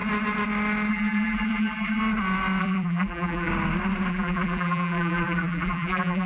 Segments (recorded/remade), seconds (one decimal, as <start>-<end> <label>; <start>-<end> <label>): 0.0-0.9 recorded; 0.9-2.0 remade; 2.0-2.6 recorded; 2.6-3.5 remade; 3.5-4.1 recorded; 4.1-6.3 remade